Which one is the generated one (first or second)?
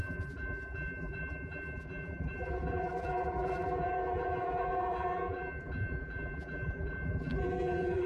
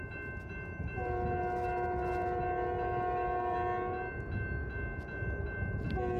first